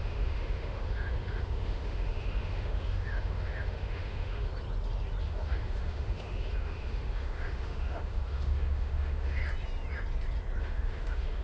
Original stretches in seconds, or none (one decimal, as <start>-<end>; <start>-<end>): 4.5-5.2; 9.4-10.6